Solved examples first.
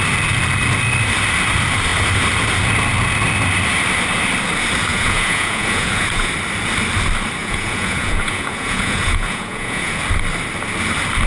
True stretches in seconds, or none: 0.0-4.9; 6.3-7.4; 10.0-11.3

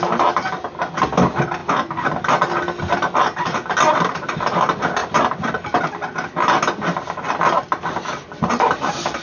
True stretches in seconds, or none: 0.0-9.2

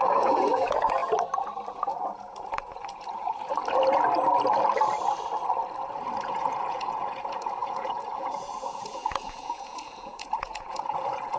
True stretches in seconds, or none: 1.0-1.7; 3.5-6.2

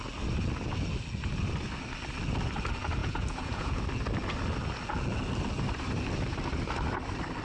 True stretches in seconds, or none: 0.0-3.0; 3.8-7.4

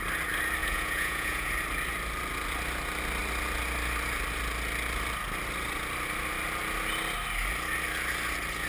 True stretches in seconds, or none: 0.0-0.6; 1.5-8.7

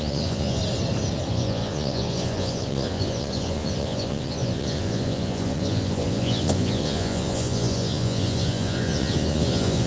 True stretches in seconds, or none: 0.6-1.3

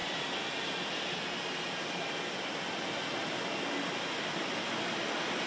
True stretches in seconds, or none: 0.0-5.5

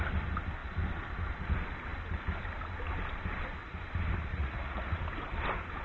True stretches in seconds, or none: 0.0-4.3; 5.0-5.8